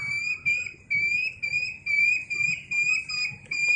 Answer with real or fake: real